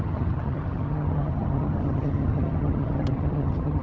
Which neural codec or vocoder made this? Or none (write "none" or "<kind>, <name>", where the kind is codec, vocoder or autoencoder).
vocoder, HiFi-GAN